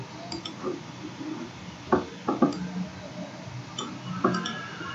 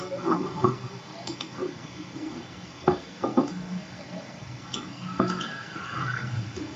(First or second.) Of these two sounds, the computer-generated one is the second